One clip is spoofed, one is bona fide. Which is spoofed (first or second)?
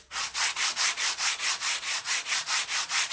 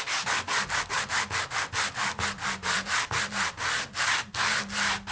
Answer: first